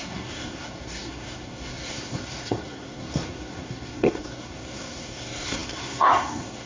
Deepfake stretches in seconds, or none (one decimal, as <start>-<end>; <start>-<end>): 0.0-6.7